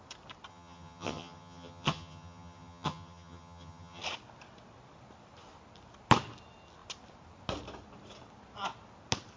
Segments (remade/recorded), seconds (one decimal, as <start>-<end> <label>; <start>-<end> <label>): 0.0-0.5 recorded; 0.5-4.0 remade; 4.0-9.4 recorded